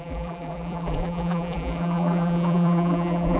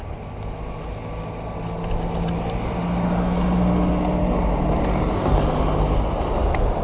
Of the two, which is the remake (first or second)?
first